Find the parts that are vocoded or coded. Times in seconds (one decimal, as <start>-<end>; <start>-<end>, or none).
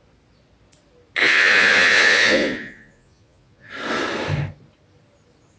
1.2-3.7